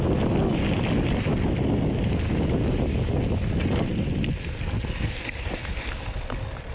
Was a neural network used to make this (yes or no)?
no